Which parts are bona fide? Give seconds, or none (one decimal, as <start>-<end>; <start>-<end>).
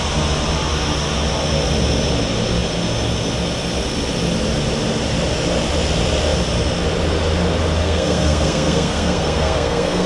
0.0-7.8